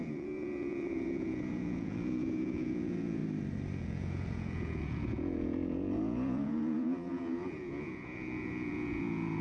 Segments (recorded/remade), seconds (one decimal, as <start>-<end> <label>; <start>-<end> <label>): 0.0-3.2 remade; 3.2-3.8 recorded; 3.8-9.4 remade

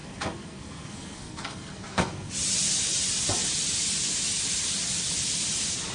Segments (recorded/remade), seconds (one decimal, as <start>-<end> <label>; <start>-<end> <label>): 0.0-2.3 remade; 2.3-5.9 recorded

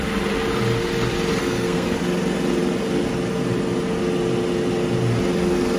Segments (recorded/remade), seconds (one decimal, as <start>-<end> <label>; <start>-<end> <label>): 0.0-1.4 recorded; 1.4-2.0 remade; 2.0-5.8 recorded

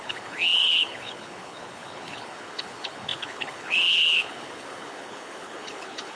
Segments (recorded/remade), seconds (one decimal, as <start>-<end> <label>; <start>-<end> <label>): 0.0-6.2 remade

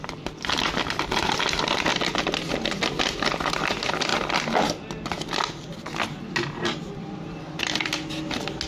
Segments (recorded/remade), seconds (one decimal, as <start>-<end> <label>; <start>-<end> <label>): 0.0-8.7 recorded

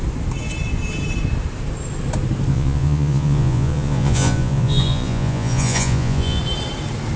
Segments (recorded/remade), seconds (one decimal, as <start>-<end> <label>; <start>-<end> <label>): 0.0-2.5 recorded; 2.5-6.4 remade; 6.4-7.2 recorded

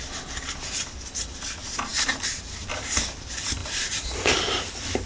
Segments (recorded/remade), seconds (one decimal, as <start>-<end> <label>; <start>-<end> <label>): 0.0-1.9 recorded; 1.9-2.7 remade; 2.7-3.6 recorded; 3.6-4.2 remade; 4.2-5.1 recorded

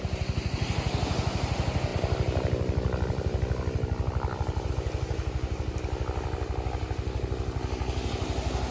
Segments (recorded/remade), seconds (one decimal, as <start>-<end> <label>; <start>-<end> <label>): 0.0-1.9 recorded; 1.9-4.7 remade; 4.7-8.7 recorded